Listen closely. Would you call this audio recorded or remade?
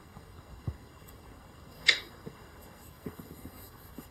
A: remade